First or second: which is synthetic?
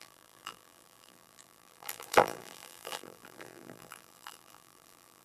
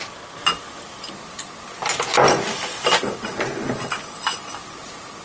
first